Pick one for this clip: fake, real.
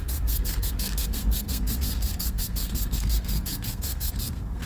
fake